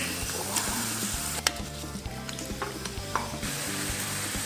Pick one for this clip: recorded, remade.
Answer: remade